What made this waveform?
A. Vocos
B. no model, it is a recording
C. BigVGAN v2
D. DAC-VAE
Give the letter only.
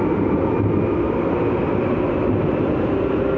B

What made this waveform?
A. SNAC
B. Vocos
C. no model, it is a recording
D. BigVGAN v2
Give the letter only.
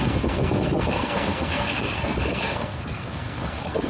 A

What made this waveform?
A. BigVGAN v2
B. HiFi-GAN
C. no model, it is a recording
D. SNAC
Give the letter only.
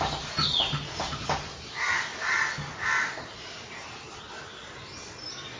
C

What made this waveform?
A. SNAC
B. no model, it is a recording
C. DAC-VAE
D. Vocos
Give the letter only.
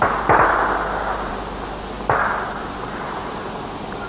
B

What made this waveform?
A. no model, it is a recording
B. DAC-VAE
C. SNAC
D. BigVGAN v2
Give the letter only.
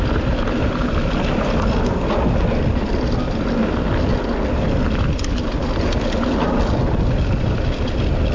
A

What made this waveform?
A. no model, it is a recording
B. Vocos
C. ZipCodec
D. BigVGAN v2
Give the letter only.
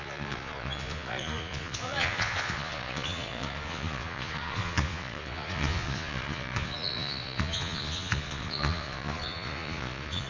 B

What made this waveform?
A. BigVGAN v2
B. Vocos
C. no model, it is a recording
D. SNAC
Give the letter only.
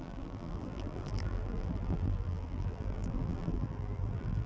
A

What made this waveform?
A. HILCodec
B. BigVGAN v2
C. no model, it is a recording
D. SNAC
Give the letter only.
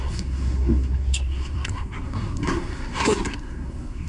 D